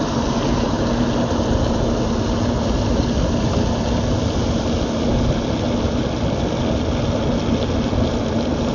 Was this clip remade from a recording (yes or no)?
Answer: no